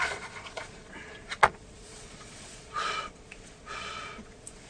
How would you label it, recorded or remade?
remade